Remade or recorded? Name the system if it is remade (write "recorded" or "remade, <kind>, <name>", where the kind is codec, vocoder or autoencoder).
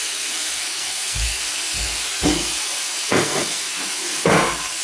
remade, codec, SNAC